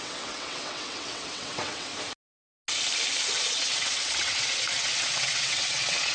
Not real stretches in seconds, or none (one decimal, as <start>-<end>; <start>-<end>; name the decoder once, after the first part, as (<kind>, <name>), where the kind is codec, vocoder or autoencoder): 0.0-1.9 (vocoder, WaveNeXt); 3.4-6.1